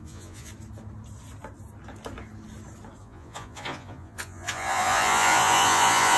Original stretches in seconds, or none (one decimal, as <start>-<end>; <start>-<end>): 0.5-3.0